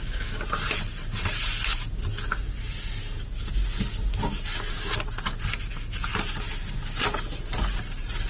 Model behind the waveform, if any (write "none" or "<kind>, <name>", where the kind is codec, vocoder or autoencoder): none